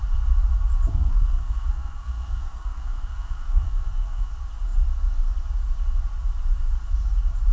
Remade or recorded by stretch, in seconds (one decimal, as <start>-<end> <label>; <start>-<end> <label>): 0.0-0.9 recorded; 0.9-4.3 remade; 4.3-7.5 recorded